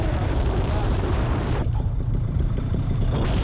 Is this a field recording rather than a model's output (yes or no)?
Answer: no